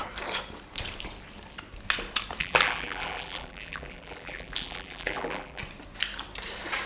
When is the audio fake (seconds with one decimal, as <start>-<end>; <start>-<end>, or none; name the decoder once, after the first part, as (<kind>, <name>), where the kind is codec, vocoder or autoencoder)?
2.4-5.6 (vocoder, BigVGAN v2)